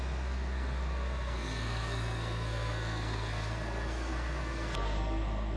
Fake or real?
fake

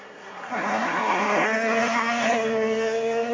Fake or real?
fake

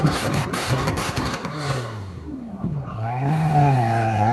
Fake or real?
fake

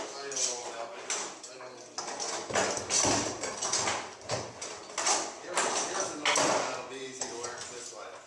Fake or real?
real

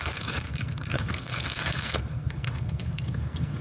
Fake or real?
fake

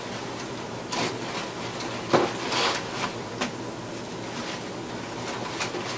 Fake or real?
real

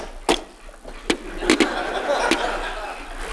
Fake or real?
real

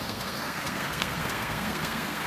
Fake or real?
fake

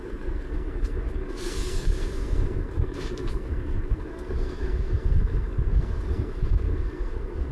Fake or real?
fake